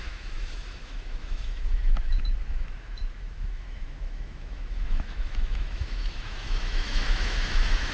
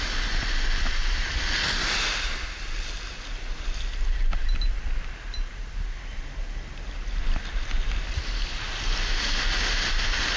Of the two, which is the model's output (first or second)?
first